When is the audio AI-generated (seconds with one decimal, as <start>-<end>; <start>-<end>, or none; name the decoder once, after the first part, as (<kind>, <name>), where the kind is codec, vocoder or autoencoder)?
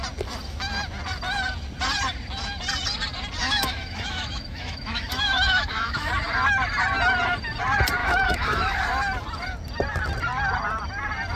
3.4-6.1 (autoencoder, DAC-VAE); 8.0-8.8